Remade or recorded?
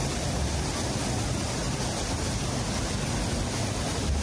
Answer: recorded